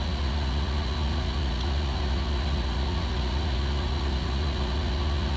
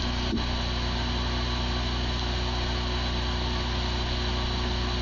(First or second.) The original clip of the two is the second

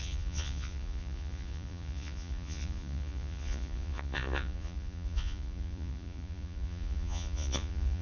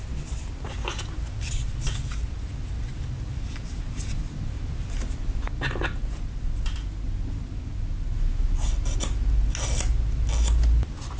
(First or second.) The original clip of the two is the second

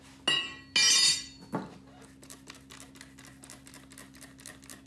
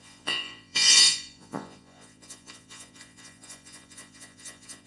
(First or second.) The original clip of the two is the first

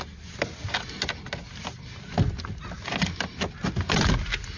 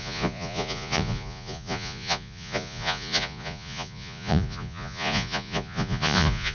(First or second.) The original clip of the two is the first